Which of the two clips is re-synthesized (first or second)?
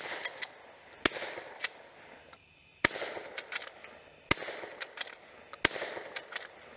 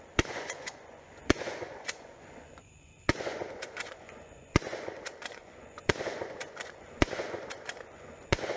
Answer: second